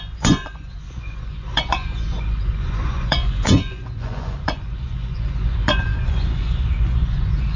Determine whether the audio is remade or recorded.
remade